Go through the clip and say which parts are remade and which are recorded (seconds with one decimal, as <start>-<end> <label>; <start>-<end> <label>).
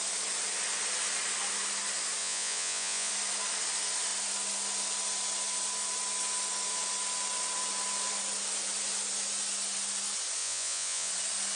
0.0-2.2 recorded; 2.2-3.1 remade; 3.1-10.4 recorded; 10.4-11.1 remade; 11.1-11.6 recorded